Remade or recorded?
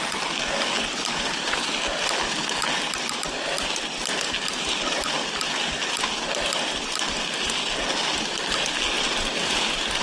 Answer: recorded